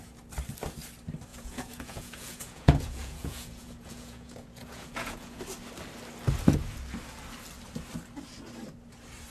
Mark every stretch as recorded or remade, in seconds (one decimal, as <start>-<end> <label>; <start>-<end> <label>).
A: 0.0-1.3 recorded; 1.3-5.4 remade; 5.4-9.3 recorded